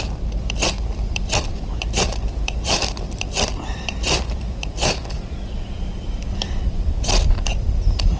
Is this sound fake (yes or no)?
yes